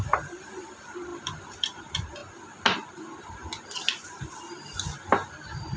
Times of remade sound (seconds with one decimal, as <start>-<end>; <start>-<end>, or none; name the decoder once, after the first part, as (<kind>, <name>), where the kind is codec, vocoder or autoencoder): 1.1-1.8 (vocoder, BigVGAN v2)